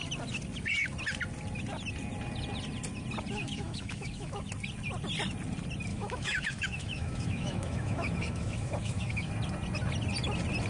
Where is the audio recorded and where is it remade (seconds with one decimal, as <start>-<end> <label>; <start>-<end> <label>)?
0.0-3.4 recorded; 3.4-4.5 remade; 4.5-5.9 recorded; 5.9-9.3 remade; 9.3-10.7 recorded